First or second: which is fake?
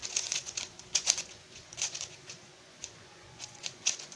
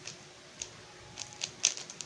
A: first